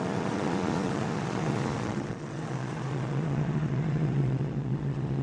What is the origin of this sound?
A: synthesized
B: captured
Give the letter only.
A